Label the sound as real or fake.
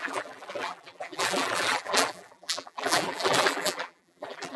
fake